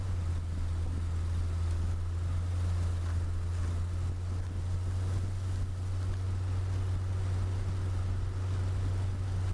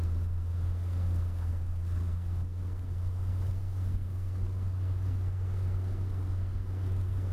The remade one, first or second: second